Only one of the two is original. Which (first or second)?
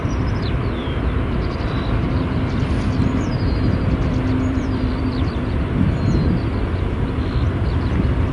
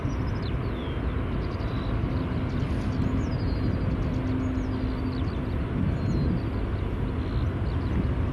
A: second